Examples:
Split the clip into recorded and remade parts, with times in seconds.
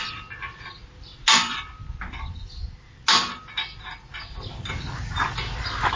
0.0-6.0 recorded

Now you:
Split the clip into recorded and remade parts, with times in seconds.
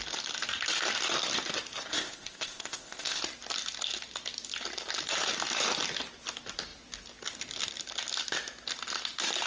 0.0-1.9 recorded; 1.9-3.2 remade; 3.2-9.5 recorded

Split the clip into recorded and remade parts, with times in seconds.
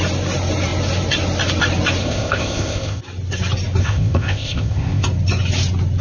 0.0-2.0 recorded; 2.0-3.0 remade; 3.0-3.8 recorded; 3.8-5.0 remade; 5.0-6.0 recorded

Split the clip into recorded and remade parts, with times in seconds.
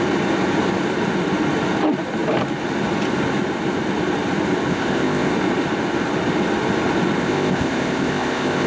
0.0-4.7 recorded; 4.7-5.3 remade; 5.3-7.2 recorded; 7.2-8.7 remade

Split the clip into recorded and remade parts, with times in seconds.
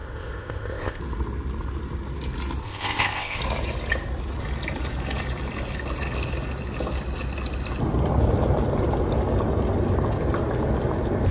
0.0-1.0 remade; 1.0-2.6 recorded; 2.6-3.4 remade; 3.4-11.3 recorded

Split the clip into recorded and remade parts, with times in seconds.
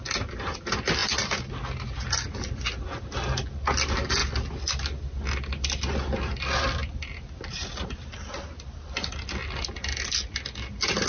0.0-11.1 recorded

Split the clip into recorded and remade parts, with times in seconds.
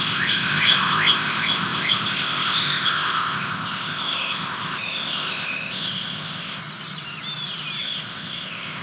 0.0-6.6 remade; 6.6-7.8 recorded; 7.8-8.8 remade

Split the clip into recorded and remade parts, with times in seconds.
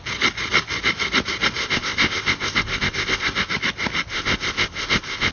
0.0-1.6 recorded; 1.6-3.5 remade; 3.5-4.1 recorded; 4.1-5.3 remade